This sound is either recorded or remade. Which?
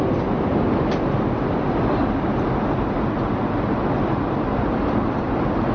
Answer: recorded